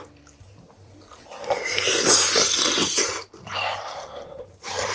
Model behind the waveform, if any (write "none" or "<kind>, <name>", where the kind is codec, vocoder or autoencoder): vocoder, BigVGAN v2